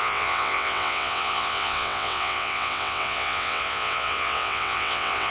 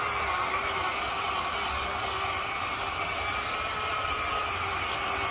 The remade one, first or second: first